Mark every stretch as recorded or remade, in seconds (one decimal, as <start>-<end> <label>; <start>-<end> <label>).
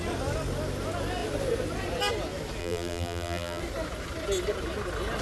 0.0-2.6 recorded; 2.6-3.6 remade; 3.6-5.2 recorded